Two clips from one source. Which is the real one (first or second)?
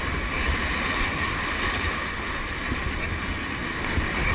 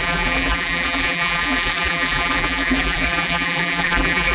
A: first